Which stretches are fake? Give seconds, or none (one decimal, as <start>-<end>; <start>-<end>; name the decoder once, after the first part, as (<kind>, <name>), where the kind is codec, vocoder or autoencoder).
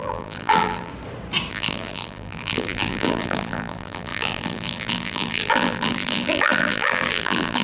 0.0-0.9 (vocoder, BigVGAN v2); 1.5-7.6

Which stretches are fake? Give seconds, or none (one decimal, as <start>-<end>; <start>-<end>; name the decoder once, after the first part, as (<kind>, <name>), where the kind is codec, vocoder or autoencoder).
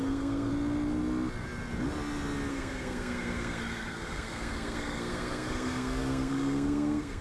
0.0-0.5 (codec, SNAC); 2.5-7.2